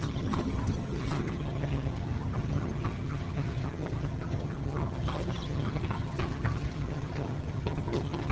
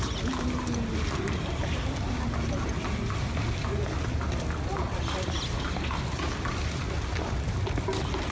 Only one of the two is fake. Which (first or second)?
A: first